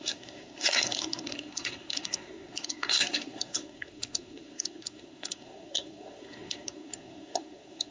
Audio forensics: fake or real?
fake